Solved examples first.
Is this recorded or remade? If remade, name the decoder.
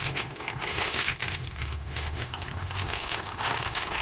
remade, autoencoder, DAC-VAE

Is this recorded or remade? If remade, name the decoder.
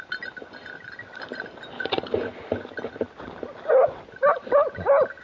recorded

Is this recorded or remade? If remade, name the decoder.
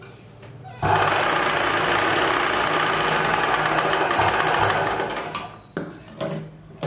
recorded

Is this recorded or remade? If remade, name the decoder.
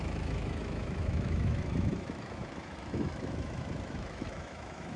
remade, autoencoder, DAC-VAE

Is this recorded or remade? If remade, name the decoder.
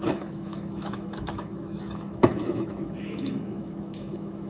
remade, autoencoder, DAC-VAE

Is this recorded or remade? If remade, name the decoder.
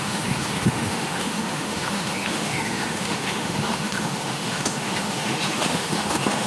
remade, autoencoder, DAC-VAE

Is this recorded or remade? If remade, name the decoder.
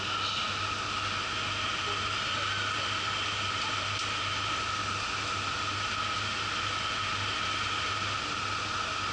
recorded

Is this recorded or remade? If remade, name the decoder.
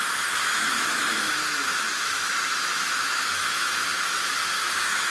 remade, autoencoder, DAC-VAE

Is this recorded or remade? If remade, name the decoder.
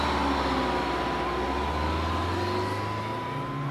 recorded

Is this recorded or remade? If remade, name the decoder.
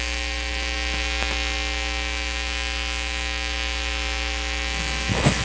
remade, autoencoder, DAC-VAE